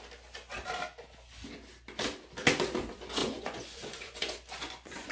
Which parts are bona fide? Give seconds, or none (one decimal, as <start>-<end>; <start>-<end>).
0.0-3.2